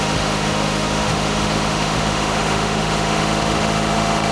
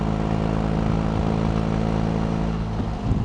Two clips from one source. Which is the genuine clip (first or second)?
second